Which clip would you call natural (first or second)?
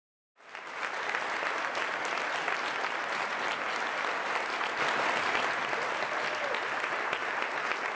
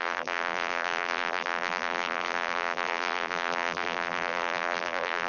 first